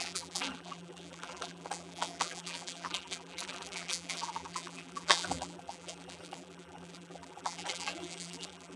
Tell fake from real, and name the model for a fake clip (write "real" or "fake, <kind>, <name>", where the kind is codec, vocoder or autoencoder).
fake, vocoder, BigVGAN v2